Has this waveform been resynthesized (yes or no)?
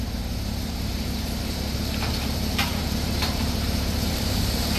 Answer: yes